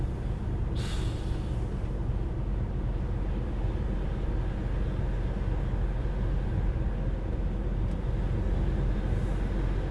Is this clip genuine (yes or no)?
yes